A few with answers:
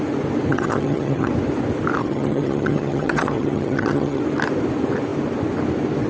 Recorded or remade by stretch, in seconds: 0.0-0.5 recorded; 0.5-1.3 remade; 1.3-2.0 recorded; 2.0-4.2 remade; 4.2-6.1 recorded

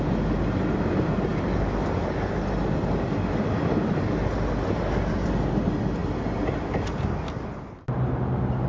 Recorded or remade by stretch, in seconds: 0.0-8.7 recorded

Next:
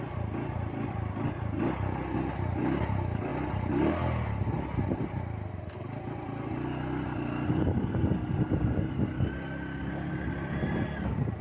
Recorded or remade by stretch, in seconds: 0.0-11.4 recorded

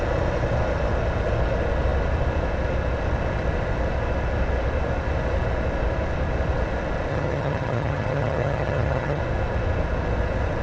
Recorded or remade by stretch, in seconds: 0.0-7.1 recorded; 7.1-9.2 remade; 9.2-10.6 recorded

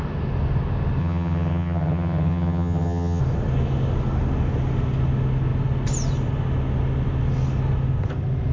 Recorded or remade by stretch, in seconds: 0.0-1.0 recorded; 1.0-3.2 remade; 3.2-8.5 recorded

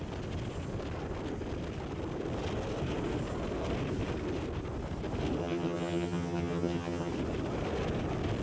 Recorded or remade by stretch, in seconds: 0.0-5.4 recorded; 5.4-7.1 remade; 7.1-8.4 recorded